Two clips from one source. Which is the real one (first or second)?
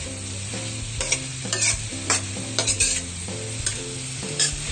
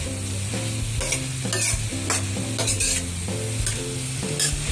second